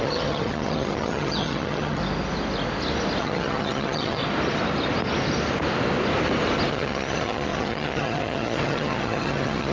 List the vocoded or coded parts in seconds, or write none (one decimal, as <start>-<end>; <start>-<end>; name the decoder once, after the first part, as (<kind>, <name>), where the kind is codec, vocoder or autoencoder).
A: 0.0-2.0 (vocoder, HiFi-GAN); 3.2-4.2; 6.7-9.7